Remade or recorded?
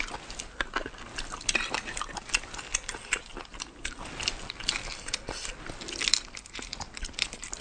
recorded